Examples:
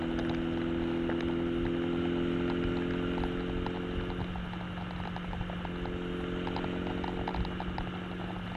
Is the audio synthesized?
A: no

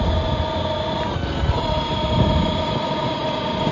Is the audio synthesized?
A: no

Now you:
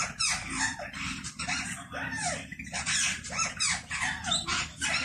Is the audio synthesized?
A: no